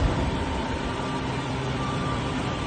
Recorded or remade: remade